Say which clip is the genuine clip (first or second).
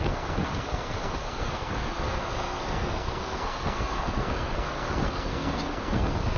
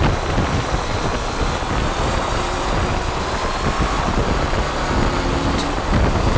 second